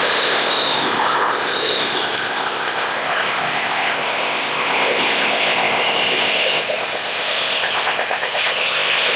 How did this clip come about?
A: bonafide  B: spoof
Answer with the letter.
B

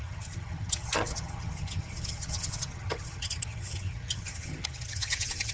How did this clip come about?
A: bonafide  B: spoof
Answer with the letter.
B